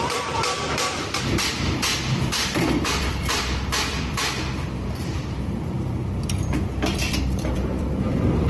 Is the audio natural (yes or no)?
no